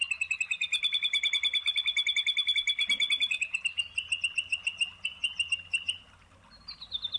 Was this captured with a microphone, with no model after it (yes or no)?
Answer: yes